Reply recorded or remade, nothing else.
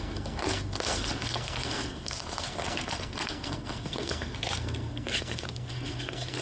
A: remade